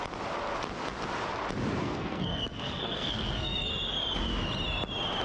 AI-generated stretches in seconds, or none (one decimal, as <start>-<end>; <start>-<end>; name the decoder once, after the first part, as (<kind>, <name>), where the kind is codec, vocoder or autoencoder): 1.8-3.7 (codec, SNAC)